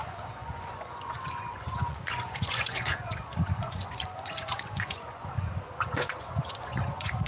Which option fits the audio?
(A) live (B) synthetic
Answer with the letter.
B